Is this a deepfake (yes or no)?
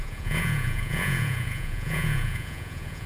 yes